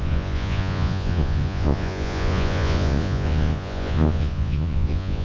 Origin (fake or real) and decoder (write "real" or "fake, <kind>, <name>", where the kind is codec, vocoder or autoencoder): fake, vocoder, Vocos